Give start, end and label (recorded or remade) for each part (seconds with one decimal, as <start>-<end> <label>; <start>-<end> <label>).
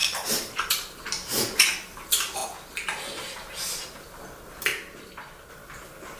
0.0-0.7 remade; 0.7-6.2 recorded